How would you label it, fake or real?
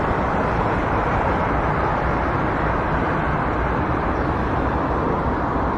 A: fake